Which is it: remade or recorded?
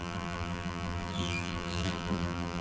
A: remade